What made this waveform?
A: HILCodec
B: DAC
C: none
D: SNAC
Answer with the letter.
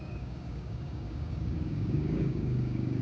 B